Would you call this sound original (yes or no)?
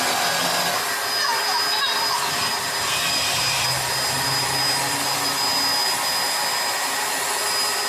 yes